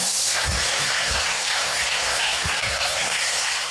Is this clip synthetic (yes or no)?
yes